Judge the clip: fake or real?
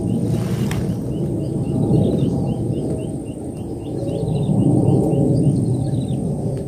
real